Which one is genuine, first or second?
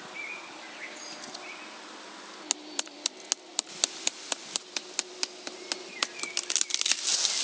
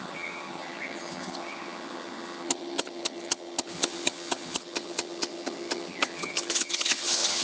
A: first